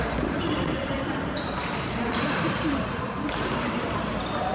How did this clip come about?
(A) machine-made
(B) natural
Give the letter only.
A